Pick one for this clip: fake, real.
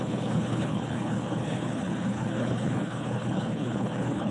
fake